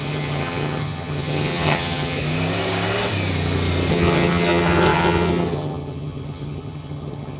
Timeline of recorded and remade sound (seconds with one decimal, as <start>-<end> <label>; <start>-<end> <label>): 0.0-2.2 remade; 2.2-3.9 recorded; 3.9-7.4 remade